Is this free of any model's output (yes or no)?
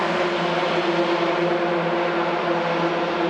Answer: yes